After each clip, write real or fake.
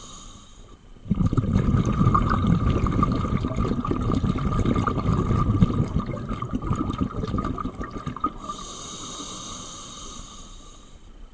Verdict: real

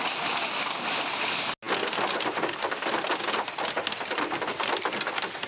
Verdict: real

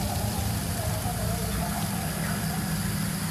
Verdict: fake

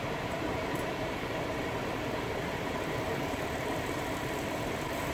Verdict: fake